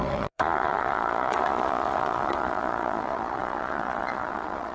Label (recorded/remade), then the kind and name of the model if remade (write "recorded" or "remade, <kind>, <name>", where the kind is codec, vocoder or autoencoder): remade, vocoder, Vocos